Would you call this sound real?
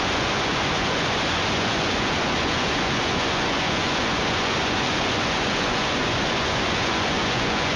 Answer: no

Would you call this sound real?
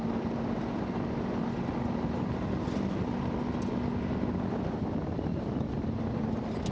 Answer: yes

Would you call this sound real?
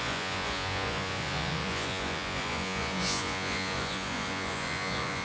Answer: no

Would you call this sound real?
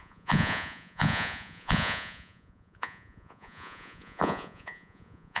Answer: no